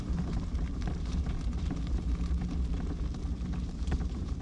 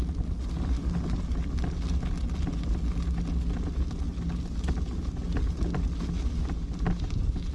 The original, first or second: second